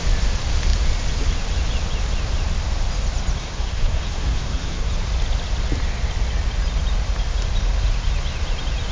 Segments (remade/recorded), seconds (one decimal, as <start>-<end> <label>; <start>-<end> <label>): 0.0-3.4 recorded; 3.4-4.9 remade; 4.9-8.9 recorded